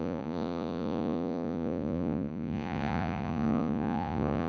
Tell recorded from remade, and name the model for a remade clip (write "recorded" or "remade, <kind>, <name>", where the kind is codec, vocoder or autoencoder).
remade, vocoder, Vocos